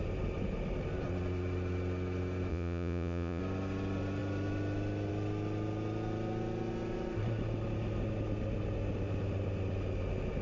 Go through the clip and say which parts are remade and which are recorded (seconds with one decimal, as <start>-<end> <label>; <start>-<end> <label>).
0.0-2.5 recorded; 2.5-3.4 remade; 3.4-10.4 recorded